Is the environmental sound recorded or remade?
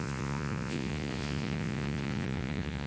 remade